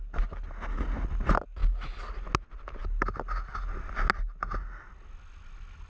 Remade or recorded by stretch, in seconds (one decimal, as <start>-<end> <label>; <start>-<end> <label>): 0.0-5.9 recorded